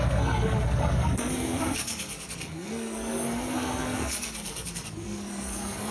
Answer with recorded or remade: remade